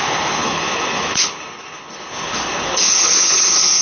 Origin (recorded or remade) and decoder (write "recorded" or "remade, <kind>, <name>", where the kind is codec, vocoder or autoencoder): remade, codec, HILCodec